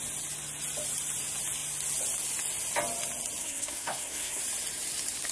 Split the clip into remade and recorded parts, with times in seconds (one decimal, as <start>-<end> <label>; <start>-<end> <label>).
0.0-3.4 recorded; 3.4-4.4 remade; 4.4-5.3 recorded